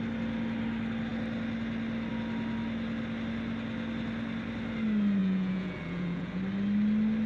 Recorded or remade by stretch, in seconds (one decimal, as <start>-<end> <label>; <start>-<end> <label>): 0.0-5.2 recorded; 5.2-6.4 remade; 6.4-7.3 recorded